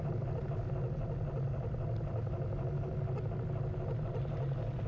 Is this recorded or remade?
recorded